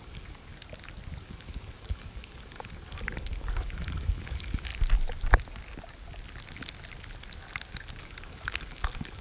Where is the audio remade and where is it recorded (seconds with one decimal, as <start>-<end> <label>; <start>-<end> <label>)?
0.0-0.5 remade; 0.5-1.2 recorded; 1.2-4.7 remade; 4.7-8.0 recorded; 8.0-9.2 remade